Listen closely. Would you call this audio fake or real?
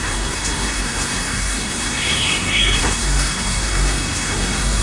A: fake